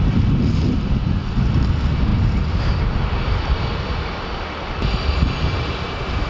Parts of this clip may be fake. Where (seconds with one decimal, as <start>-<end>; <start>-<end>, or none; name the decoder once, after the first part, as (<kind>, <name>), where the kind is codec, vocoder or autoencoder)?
none